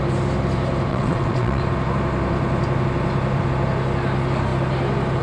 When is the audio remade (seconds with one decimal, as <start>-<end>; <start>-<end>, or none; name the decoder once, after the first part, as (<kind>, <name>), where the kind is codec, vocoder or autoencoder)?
0.9-1.6 (vocoder, WaveNeXt)